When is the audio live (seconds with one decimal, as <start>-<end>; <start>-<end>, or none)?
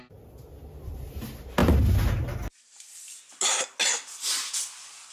0.0-5.1